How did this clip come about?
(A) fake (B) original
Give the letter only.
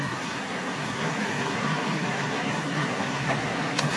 A